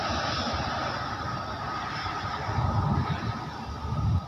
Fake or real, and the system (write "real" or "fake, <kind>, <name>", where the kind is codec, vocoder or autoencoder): real